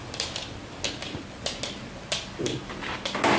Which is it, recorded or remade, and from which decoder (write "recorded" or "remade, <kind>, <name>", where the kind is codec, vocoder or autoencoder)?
recorded